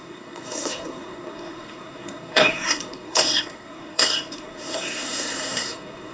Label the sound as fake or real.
fake